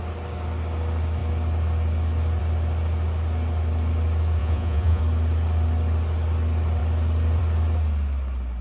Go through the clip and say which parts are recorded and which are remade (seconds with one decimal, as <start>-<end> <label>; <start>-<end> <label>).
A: 0.0-4.4 recorded; 4.4-5.0 remade; 5.0-8.6 recorded